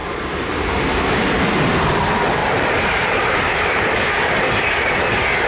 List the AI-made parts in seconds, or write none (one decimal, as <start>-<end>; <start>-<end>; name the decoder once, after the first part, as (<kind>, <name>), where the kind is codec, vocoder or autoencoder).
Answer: 0.0-1.4 (vocoder, BigVGAN v2); 2.4-4.1